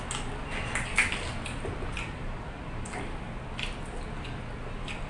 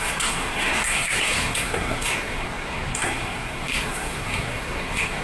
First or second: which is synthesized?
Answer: second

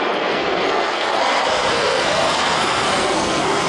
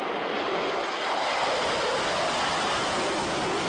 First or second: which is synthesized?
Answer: first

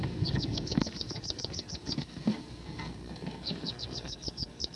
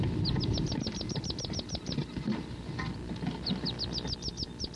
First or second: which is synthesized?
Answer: first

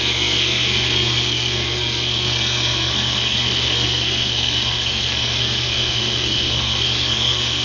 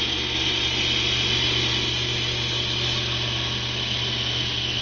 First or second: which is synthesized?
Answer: first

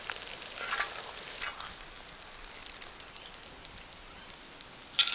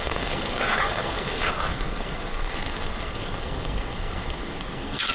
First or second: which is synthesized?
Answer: second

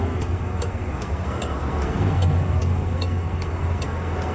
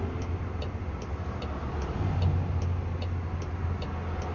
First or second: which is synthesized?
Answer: first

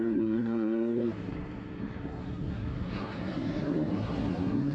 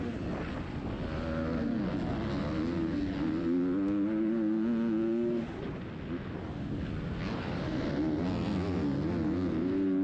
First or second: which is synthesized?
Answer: first